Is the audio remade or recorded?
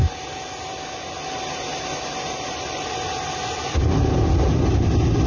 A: recorded